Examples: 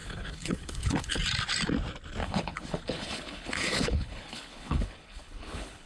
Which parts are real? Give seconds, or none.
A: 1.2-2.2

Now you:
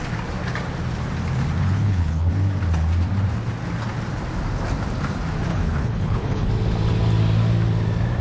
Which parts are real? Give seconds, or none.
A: 0.0-1.6; 2.3-5.5; 6.5-8.2

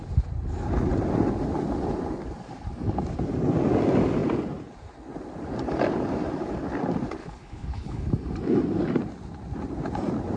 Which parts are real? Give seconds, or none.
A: 0.0-7.2; 8.1-10.4

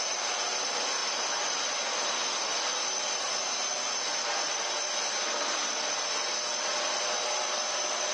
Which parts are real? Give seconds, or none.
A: 0.0-8.1

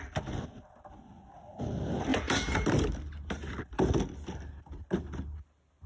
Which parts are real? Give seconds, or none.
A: 0.0-5.9

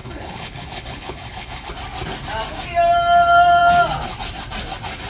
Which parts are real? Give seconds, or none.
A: 1.7-5.1

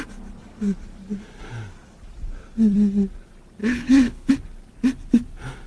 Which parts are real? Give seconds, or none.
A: 0.0-3.6; 4.3-5.7